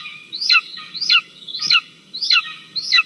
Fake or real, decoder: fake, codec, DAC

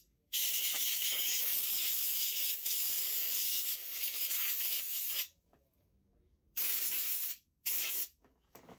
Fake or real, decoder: fake, codec, DAC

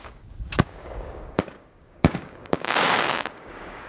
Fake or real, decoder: fake, codec, DAC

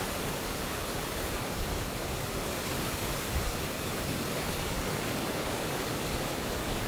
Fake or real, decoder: fake, codec, DAC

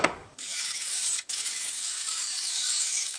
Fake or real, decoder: fake, codec, DAC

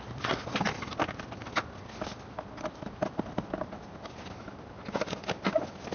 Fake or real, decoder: real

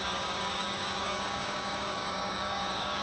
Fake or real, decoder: fake, codec, DAC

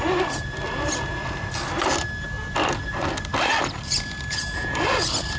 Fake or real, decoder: real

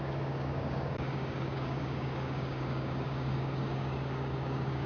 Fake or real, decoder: fake, codec, DAC